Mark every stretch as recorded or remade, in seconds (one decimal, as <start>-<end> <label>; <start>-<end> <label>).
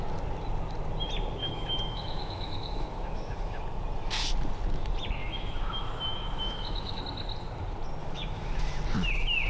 0.0-1.4 recorded; 1.4-3.6 remade; 3.6-5.2 recorded; 5.2-7.0 remade; 7.0-8.0 recorded; 8.0-8.7 remade; 8.7-9.5 recorded